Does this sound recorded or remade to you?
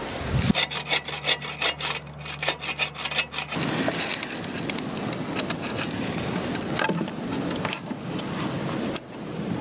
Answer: recorded